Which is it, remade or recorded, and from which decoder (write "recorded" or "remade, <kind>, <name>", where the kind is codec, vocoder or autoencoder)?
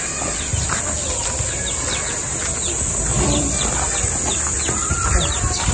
recorded